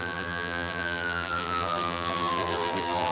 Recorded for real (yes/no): no